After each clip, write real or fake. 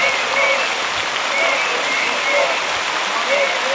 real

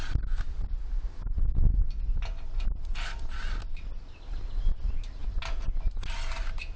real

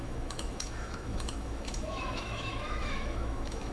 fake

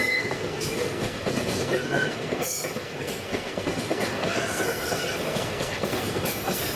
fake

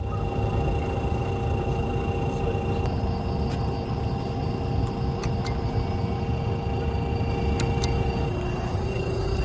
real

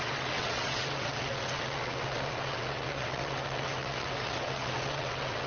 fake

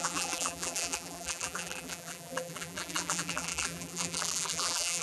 fake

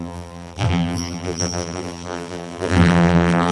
fake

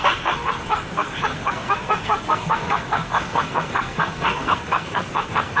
fake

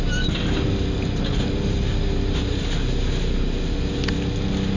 real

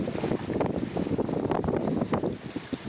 real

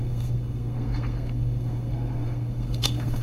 fake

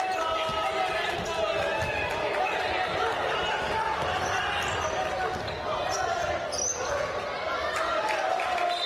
real